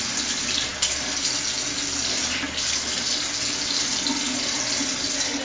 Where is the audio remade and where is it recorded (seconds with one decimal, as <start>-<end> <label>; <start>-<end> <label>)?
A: 0.0-5.4 recorded